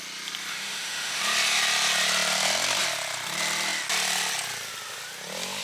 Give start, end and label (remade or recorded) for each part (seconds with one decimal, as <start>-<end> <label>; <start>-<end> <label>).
0.0-0.5 recorded; 0.5-1.2 remade; 1.2-5.6 recorded